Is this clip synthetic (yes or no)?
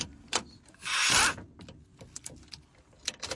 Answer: no